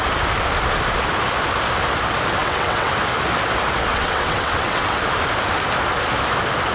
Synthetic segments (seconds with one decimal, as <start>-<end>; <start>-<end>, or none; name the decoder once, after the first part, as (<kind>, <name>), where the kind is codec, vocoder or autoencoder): 2.4-2.9 (vocoder, WaveNeXt); 3.9-5.0